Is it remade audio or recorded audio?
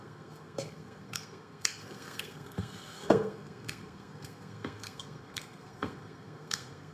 remade